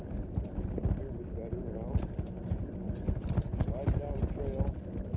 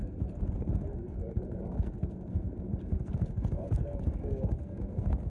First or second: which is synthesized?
second